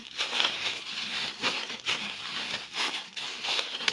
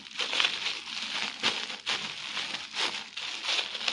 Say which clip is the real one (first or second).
second